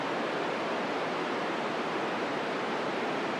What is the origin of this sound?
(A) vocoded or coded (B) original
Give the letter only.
B